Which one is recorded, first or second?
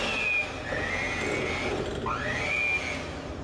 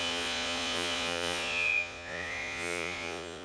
first